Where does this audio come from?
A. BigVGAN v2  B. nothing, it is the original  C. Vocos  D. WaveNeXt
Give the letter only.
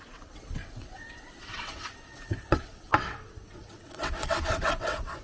D